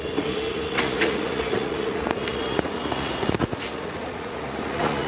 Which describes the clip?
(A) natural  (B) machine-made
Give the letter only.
B